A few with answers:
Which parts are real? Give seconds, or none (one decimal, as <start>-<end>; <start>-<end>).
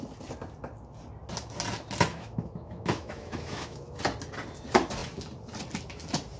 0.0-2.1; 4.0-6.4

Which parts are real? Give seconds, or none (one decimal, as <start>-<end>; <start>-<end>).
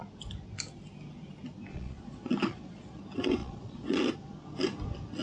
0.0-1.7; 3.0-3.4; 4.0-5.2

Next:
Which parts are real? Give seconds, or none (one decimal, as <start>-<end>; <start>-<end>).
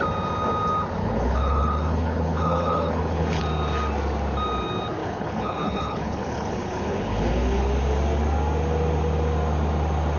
0.0-1.0; 3.4-5.0; 7.6-10.2